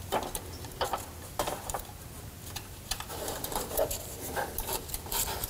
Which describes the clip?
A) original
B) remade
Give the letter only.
B